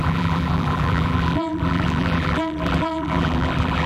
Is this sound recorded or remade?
remade